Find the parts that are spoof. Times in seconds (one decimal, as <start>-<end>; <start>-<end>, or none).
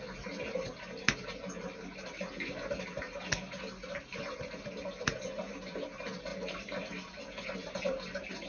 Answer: none